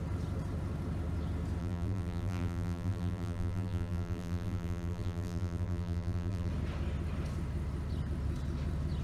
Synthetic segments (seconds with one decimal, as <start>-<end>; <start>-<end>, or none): 1.6-6.5